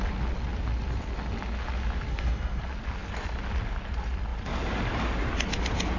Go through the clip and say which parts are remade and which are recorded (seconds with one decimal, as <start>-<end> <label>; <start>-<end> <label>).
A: 0.0-2.1 recorded; 2.1-2.6 remade; 2.6-6.0 recorded